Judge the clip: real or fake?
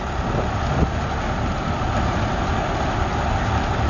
real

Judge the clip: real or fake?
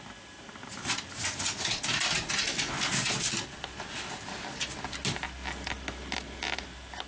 real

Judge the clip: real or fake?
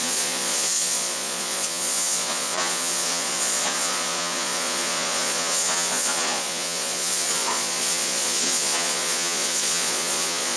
fake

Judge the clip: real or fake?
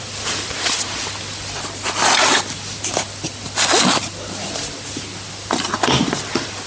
real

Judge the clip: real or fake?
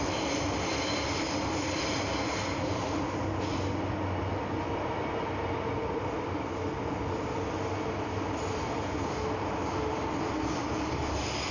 real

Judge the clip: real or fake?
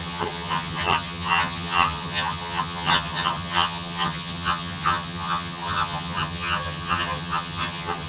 fake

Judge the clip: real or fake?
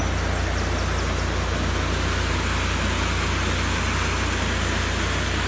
real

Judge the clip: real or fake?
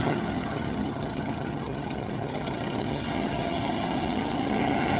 fake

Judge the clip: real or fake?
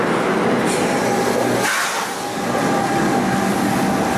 real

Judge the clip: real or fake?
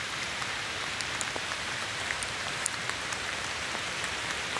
fake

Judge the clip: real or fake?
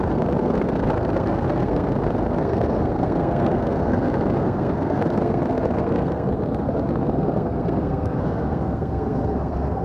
fake